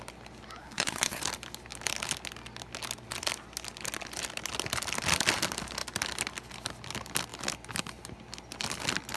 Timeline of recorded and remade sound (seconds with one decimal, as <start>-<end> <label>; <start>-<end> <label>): 0.0-0.6 recorded; 0.6-1.2 remade; 1.2-9.2 recorded